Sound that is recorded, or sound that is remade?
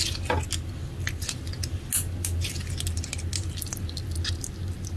recorded